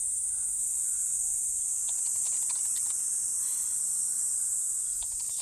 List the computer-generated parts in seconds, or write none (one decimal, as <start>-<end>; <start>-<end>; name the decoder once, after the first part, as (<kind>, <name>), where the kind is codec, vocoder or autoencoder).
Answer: none